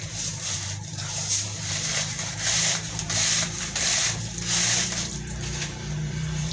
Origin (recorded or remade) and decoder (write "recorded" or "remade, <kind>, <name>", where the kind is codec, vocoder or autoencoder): remade, vocoder, BigVGAN v2